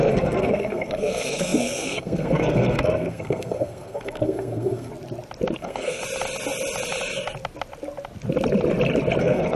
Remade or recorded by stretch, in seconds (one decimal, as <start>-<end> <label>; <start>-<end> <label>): 0.0-4.9 remade; 4.9-5.6 recorded; 5.6-6.0 remade; 6.0-9.2 recorded; 9.2-9.6 remade